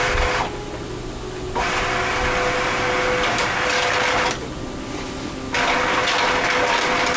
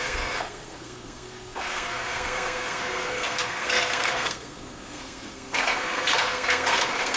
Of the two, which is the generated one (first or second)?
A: second